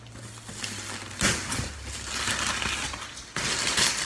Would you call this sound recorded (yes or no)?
yes